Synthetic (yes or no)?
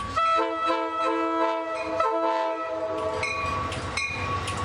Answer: no